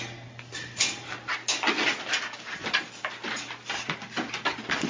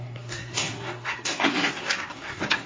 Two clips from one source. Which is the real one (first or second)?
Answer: first